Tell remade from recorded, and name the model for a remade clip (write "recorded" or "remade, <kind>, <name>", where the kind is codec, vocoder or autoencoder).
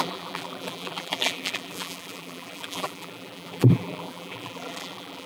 remade, vocoder, BigVGAN v2